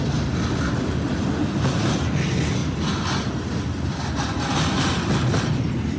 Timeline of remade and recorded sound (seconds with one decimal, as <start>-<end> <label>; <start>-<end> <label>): 0.0-6.0 recorded